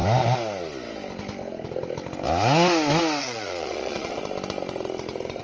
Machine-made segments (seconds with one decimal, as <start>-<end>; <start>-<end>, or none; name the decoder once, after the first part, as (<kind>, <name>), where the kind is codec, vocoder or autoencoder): 3.2-4.2 (vocoder, Vocos)